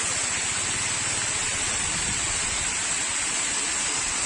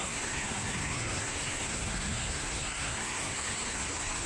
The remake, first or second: second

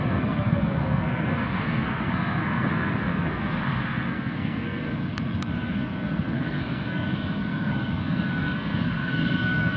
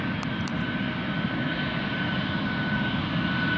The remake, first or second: first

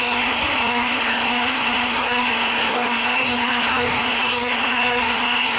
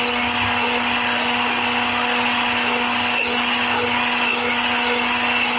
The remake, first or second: first